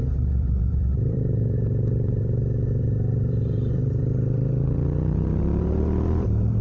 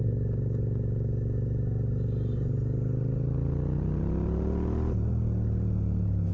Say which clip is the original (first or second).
second